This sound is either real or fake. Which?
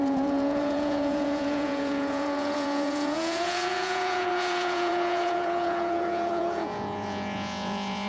fake